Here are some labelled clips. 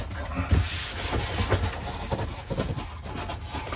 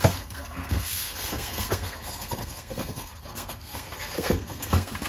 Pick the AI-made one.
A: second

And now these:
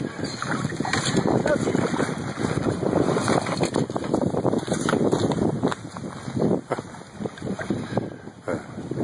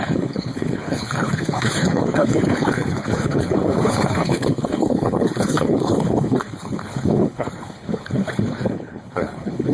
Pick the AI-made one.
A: second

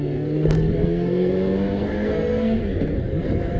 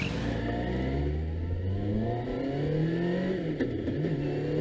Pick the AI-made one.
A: first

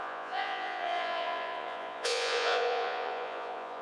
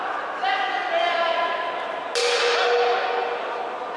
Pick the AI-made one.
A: first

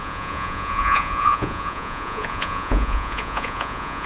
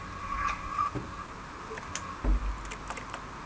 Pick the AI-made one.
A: first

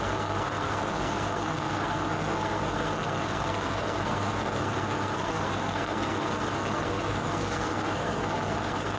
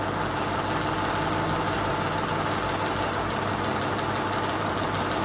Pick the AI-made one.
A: first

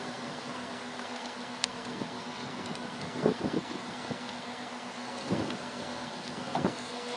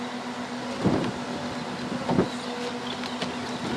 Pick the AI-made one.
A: first